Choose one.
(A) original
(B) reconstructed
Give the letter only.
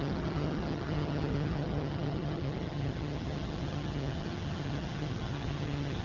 B